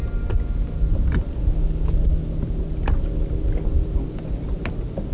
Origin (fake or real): real